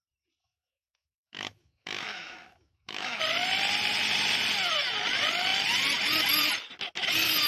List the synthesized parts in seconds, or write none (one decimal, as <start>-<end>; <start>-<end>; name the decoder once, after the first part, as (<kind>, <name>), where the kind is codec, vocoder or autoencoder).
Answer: 0.4-3.2 (autoencoder, DAC-VAE)